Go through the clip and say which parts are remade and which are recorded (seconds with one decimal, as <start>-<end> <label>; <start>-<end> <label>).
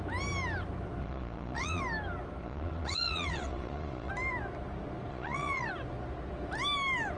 0.0-1.0 recorded; 1.0-1.8 remade; 1.8-2.4 recorded; 2.4-4.1 remade; 4.1-5.1 recorded; 5.1-5.7 remade; 5.7-7.2 recorded